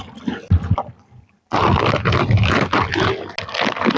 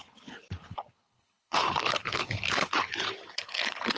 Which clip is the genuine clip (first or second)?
first